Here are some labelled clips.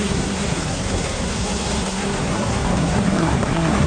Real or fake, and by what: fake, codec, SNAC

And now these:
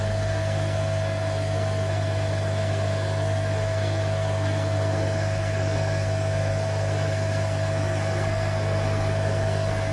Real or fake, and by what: fake, codec, SNAC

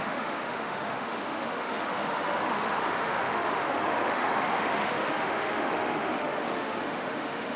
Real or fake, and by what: fake, autoencoder, DAC-VAE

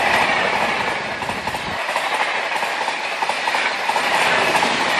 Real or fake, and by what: real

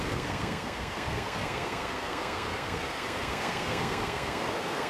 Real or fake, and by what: fake, codec, SNAC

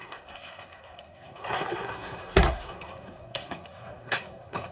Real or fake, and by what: fake, codec, SNAC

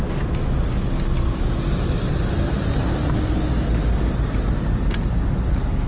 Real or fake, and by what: real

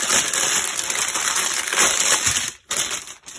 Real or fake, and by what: real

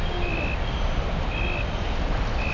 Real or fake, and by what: real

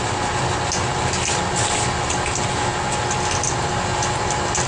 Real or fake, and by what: real